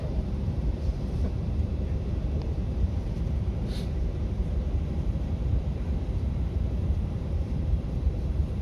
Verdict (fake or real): fake